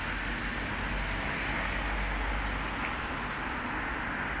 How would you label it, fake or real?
real